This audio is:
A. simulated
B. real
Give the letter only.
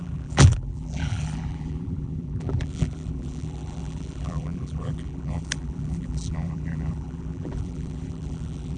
A